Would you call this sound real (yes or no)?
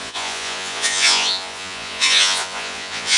no